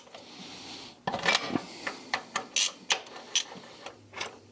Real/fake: real